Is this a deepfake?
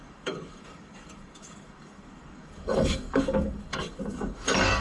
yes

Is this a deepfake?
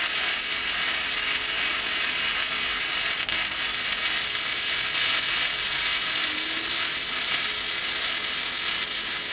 no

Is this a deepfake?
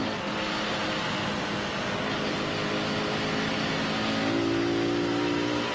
no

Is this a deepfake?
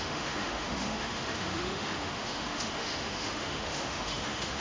yes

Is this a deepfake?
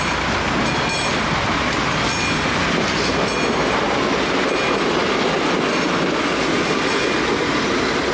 no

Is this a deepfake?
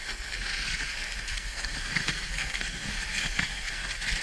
yes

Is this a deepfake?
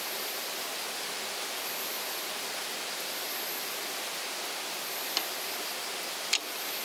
no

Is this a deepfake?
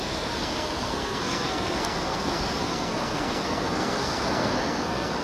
yes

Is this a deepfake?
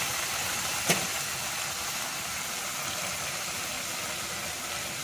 no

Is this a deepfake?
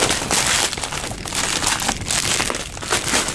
no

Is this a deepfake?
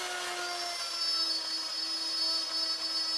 no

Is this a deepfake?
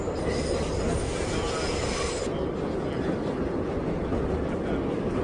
no